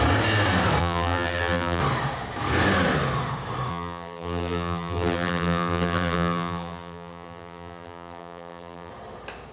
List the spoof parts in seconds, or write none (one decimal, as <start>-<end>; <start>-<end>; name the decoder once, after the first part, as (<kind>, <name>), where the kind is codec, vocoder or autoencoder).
0.8-1.8 (vocoder, BigVGAN v2); 3.7-8.9